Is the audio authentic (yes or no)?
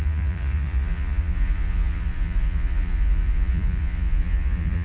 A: no